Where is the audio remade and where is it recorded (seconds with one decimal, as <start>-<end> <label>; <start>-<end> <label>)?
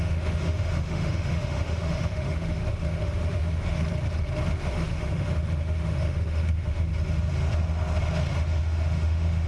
0.0-3.8 remade; 3.8-4.6 recorded; 4.6-6.9 remade; 6.9-8.3 recorded; 8.3-9.5 remade